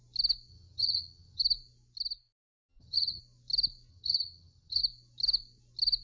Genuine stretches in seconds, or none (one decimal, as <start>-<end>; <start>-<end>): 0.0-0.5; 1.4-2.7; 3.2-3.9; 4.8-6.0